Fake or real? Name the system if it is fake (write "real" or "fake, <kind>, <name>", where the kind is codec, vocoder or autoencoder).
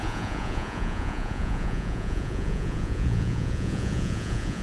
fake, vocoder, Vocos